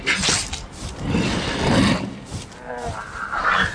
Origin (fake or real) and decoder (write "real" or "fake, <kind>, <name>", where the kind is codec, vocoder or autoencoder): real